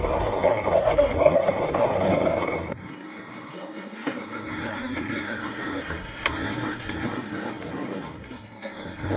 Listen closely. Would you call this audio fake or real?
fake